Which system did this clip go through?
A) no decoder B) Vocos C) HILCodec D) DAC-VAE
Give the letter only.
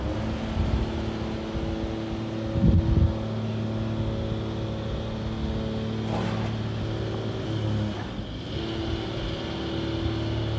A